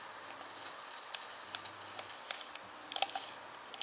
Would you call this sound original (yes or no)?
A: yes